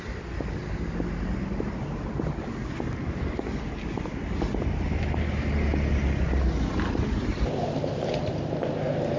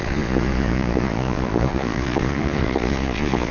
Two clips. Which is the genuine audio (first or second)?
first